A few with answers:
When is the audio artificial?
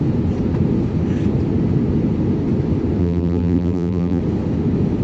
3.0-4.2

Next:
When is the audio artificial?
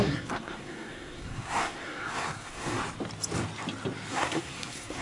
0.0-2.8; 4.1-5.0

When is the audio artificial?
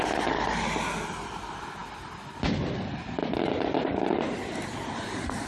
none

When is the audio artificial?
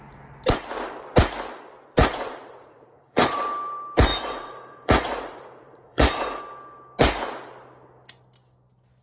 2.0-3.4; 4.1-6.4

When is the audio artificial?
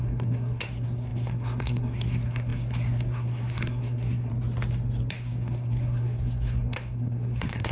0.0-4.3; 5.1-7.7